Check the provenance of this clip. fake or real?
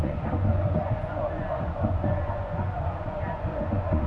fake